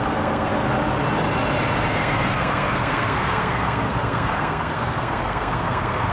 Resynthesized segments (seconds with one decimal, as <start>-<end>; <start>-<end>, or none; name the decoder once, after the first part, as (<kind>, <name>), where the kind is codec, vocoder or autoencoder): 0.0-0.5 (codec, SNAC); 1.9-6.1